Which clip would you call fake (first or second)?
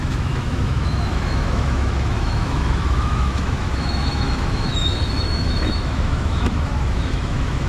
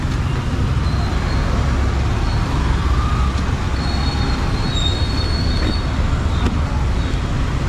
first